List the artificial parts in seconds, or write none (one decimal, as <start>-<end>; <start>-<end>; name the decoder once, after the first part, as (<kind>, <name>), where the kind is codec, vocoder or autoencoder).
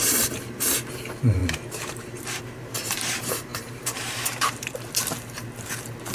0.0-6.1 (vocoder, BigVGAN v2)